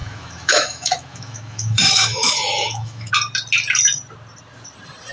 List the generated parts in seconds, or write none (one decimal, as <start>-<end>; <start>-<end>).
0.0-3.1